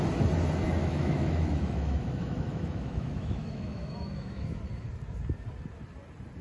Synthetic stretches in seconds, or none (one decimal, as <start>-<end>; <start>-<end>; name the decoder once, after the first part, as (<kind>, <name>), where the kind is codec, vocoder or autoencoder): 0.8-4.6 (autoencoder, DAC-VAE)